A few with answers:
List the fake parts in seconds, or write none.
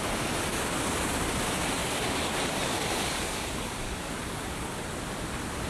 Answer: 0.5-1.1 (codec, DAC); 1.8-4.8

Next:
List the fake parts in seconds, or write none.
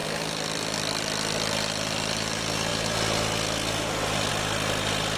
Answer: none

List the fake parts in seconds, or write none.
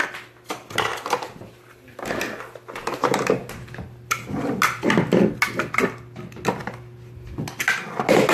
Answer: none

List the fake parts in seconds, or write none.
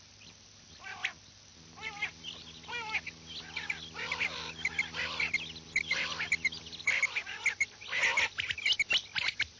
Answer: none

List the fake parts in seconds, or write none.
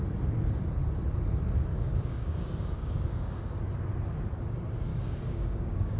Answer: 1.7-3.6 (codec, DAC); 4.9-6.0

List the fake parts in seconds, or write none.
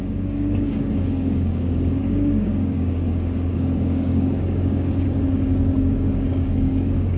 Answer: 0.0-7.2 (codec, DAC)